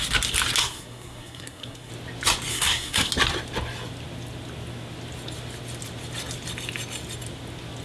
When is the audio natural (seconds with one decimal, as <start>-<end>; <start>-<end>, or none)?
0.0-0.6; 1.9-2.5; 3.1-7.8